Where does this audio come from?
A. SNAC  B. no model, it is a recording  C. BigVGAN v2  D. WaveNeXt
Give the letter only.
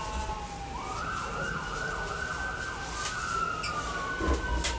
B